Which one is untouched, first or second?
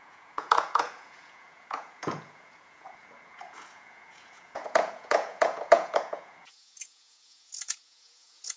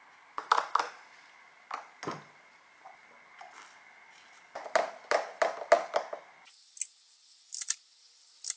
second